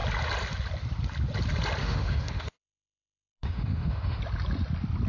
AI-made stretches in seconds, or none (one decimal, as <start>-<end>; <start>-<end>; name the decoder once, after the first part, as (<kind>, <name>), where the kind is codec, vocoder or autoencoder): 1.8-4.2 (autoencoder, DAC-VAE)